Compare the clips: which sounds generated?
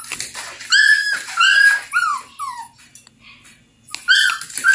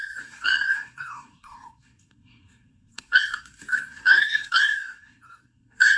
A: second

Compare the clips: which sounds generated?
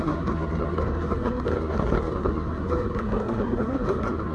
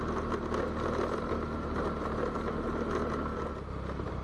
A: first